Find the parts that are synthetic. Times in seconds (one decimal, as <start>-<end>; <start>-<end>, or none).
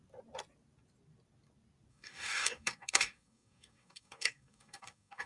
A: 1.9-5.3